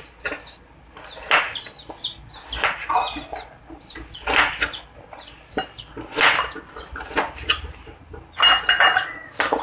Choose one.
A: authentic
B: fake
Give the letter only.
A